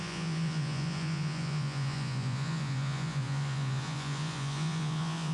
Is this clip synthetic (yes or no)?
yes